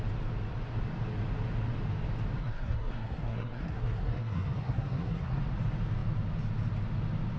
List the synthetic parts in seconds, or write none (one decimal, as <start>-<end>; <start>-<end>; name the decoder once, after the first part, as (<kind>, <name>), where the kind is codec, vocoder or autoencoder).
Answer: 2.4-5.4 (codec, SNAC)